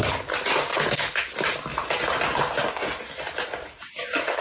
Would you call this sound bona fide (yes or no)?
yes